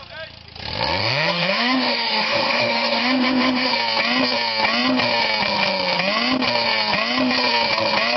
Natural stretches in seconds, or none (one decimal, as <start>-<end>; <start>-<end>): 0.0-1.0; 3.7-8.2